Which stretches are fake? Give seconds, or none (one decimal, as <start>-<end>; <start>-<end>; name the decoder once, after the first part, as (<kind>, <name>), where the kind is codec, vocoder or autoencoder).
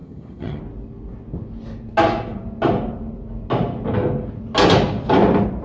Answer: 0.0-0.6 (vocoder, HiFi-GAN)